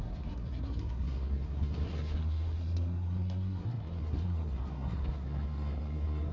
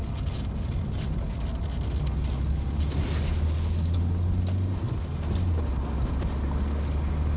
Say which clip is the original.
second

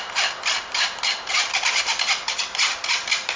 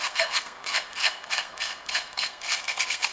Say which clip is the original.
first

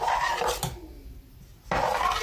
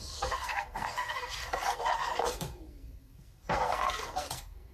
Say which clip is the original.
first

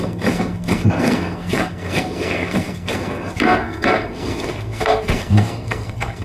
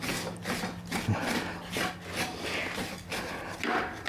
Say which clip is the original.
second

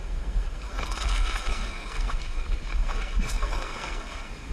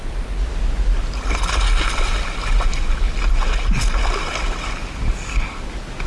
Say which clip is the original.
second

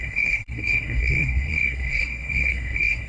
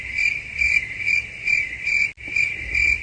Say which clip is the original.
second